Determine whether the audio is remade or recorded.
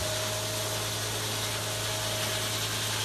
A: recorded